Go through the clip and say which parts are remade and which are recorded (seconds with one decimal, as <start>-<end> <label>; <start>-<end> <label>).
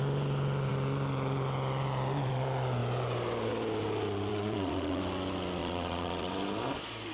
0.0-4.3 recorded; 4.3-5.0 remade; 5.0-5.6 recorded; 5.6-6.3 remade; 6.3-7.1 recorded